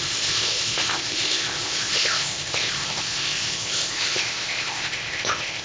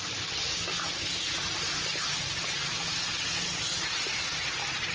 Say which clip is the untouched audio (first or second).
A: second